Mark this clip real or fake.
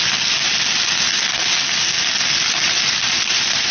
real